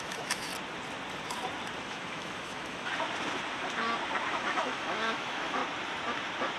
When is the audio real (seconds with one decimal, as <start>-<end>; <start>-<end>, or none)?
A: 0.5-1.8; 2.9-4.3; 5.6-6.6